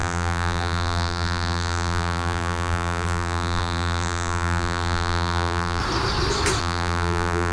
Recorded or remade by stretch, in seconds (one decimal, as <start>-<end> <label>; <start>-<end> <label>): 0.0-5.8 remade; 5.8-6.6 recorded; 6.6-7.5 remade